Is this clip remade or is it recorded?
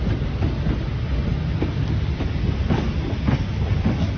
recorded